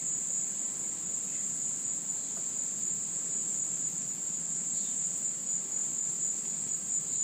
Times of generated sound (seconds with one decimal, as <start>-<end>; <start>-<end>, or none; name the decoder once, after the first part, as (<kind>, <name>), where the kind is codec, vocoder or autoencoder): 2.1-3.4 (vocoder, BigVGAN v2); 4.5-5.4; 6.7-7.2